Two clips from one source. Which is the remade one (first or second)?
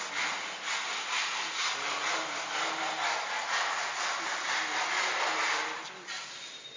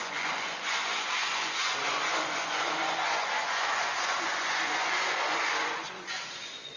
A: second